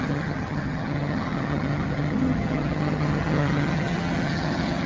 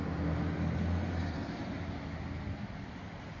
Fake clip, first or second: first